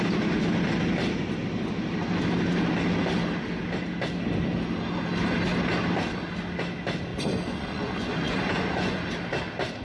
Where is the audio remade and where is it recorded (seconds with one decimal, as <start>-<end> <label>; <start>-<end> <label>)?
0.0-7.1 recorded; 7.1-9.0 remade; 9.0-9.8 recorded